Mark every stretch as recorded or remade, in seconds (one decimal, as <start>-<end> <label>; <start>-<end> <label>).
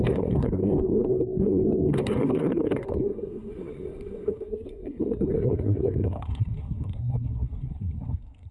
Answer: 0.0-8.5 remade